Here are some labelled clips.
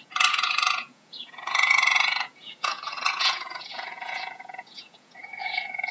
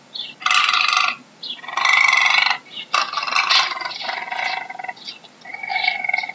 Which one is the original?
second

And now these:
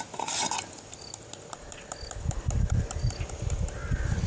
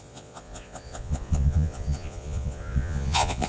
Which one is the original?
first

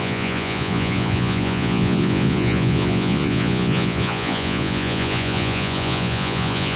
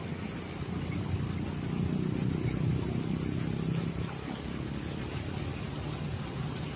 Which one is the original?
second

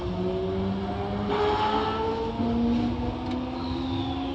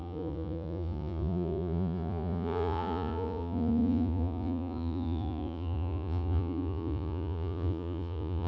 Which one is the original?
first